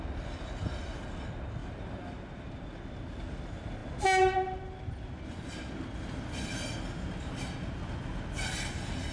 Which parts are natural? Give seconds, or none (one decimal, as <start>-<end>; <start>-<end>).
0.0-9.1